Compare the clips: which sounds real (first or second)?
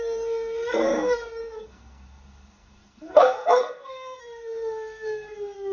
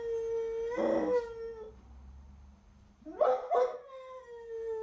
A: second